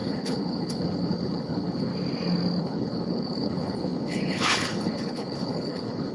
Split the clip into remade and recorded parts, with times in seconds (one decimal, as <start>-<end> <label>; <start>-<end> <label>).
0.0-1.9 remade; 1.9-2.6 recorded; 2.6-6.1 remade